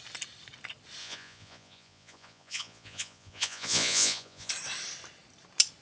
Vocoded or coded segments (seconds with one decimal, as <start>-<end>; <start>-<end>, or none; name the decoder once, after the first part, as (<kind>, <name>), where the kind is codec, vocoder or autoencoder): 1.0-4.5 (vocoder, Vocos)